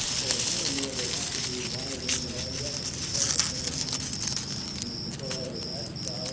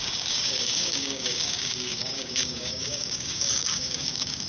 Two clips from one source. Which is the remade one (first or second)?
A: second